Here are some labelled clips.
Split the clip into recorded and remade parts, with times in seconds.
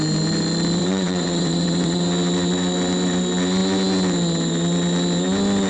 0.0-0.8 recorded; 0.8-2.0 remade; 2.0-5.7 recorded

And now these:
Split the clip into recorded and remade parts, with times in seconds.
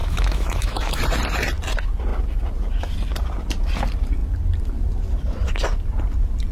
0.0-1.0 remade; 1.0-6.5 recorded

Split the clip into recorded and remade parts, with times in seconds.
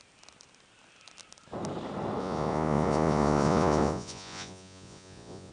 0.0-2.2 recorded; 2.2-5.5 remade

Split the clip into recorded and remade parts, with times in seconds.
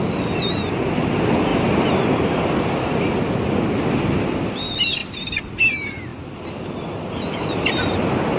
0.0-8.4 recorded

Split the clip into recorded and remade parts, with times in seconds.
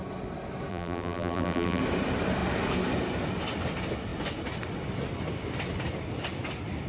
0.0-0.7 recorded; 0.7-1.8 remade; 1.8-6.9 recorded